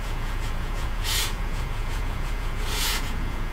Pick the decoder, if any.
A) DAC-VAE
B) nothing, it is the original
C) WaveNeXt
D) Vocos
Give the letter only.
D